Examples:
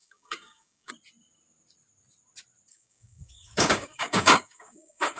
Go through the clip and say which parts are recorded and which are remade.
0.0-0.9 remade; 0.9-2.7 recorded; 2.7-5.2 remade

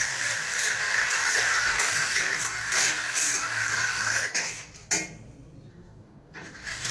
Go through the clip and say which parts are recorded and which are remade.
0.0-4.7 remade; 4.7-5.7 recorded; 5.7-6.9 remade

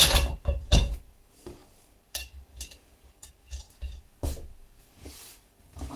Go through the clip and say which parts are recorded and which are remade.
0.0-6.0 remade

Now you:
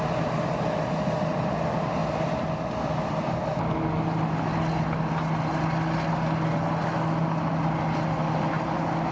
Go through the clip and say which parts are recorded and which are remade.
0.0-9.1 recorded

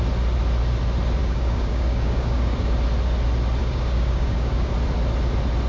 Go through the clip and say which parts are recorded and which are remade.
0.0-1.2 recorded; 1.2-2.8 remade; 2.8-3.6 recorded; 3.6-4.7 remade; 4.7-5.7 recorded

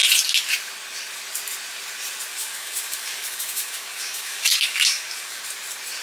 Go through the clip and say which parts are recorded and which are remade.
0.0-2.3 recorded; 2.3-5.4 remade; 5.4-6.0 recorded